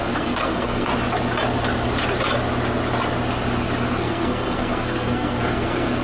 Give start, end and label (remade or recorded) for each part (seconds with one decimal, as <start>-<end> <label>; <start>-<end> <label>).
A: 0.0-0.9 remade; 0.9-4.0 recorded; 4.0-6.0 remade

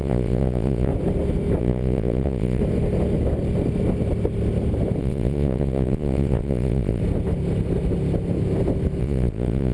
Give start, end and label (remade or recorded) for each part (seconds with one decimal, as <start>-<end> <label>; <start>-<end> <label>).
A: 0.0-0.9 remade; 0.9-1.6 recorded; 1.6-2.6 remade; 2.6-5.0 recorded; 5.0-7.0 remade; 7.0-9.0 recorded; 9.0-9.7 remade

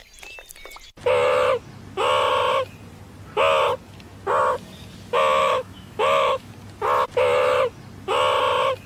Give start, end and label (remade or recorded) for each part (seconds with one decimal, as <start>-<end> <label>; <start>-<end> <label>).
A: 0.0-5.4 recorded; 5.4-6.5 remade; 6.5-8.9 recorded